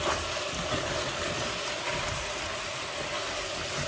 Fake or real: real